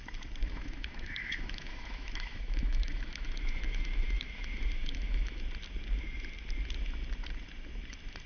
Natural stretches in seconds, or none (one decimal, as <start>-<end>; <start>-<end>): 0.0-0.4; 5.4-8.3